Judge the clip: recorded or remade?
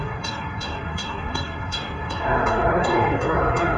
remade